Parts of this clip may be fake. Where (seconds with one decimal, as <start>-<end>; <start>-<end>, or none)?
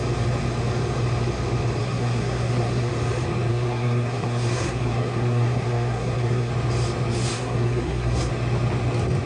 1.8-2.9; 3.5-6.5; 7.3-8.3